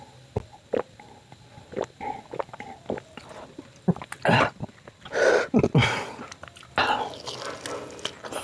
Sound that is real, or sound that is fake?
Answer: real